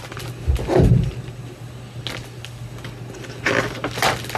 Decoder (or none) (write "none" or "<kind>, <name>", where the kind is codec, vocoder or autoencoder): none